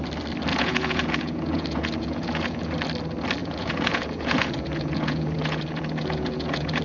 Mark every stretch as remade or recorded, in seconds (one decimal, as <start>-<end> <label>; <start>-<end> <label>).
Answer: 0.0-0.5 recorded; 0.5-2.7 remade; 2.7-3.4 recorded; 3.4-6.8 remade